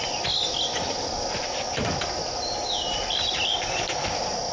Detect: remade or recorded recorded